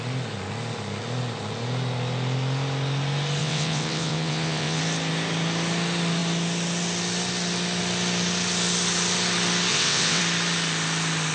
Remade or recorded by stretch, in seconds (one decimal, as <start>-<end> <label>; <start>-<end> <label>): 0.0-3.4 recorded; 3.4-4.8 remade; 4.8-9.7 recorded; 9.7-10.2 remade; 10.2-11.3 recorded